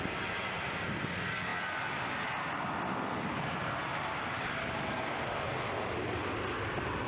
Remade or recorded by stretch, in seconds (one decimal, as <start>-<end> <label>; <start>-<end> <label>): 0.0-7.1 recorded